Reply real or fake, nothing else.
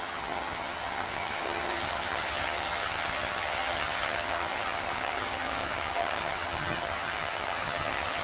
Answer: fake